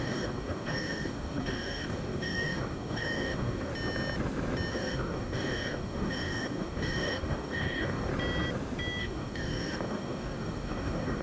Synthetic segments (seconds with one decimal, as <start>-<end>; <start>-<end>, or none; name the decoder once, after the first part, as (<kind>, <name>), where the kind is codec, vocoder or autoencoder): 0.0-3.7 (codec, DAC); 4.7-8.1; 9.0-11.2